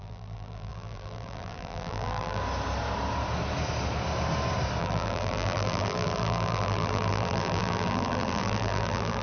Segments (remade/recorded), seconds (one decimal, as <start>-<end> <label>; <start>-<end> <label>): 0.0-2.4 remade; 2.4-4.8 recorded; 4.8-9.2 remade

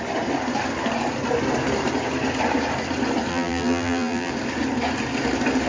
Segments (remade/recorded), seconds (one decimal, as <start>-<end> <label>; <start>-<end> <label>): 0.0-3.3 recorded; 3.3-4.3 remade; 4.3-5.7 recorded

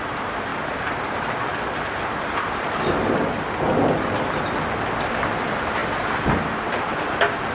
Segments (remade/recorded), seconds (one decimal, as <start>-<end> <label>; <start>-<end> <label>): 0.0-7.5 remade